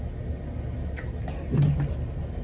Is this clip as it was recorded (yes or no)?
yes